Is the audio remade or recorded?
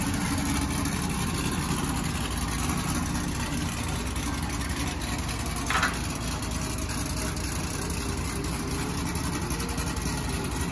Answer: recorded